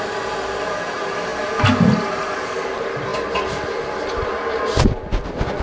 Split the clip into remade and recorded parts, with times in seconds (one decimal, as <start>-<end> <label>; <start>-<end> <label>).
0.0-5.6 recorded